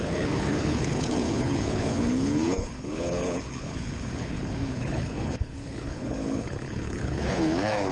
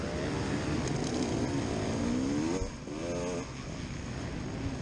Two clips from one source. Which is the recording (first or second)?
second